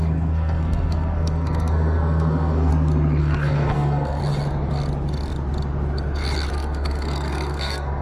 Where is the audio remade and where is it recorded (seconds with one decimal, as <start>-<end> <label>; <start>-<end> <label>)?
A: 0.0-2.7 remade; 2.7-3.2 recorded; 3.2-4.2 remade; 4.2-6.5 recorded; 6.5-8.0 remade